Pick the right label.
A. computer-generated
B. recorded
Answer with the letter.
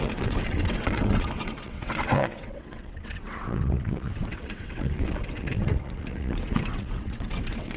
A